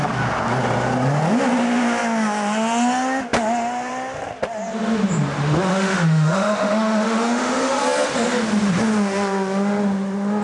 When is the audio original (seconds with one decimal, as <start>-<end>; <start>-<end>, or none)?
0.0-5.7; 7.8-10.4